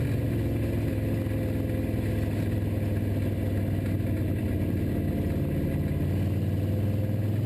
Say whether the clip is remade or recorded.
recorded